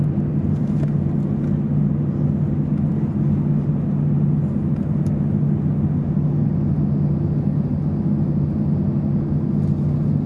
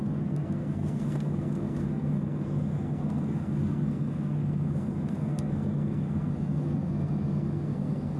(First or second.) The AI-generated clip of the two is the second